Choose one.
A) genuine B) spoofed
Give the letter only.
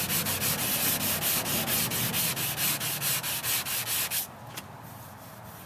A